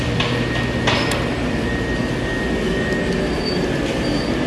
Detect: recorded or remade recorded